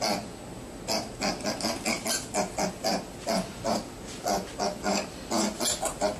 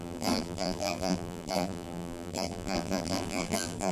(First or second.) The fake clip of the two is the second